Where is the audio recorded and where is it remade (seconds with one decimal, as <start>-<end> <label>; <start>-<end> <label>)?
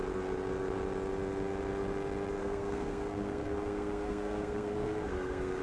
0.0-2.4 recorded; 2.4-5.6 remade